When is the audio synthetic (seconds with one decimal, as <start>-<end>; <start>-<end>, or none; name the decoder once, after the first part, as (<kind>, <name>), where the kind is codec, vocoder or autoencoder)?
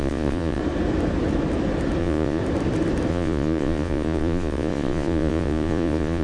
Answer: 0.0-0.6 (vocoder, Vocos); 2.0-2.4; 3.1-6.2